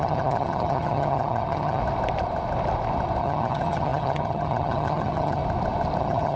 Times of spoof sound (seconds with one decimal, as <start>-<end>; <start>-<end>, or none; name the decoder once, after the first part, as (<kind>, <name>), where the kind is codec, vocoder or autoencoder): 0.0-1.8 (vocoder, HiFi-GAN); 3.2-5.4; 6.0-6.4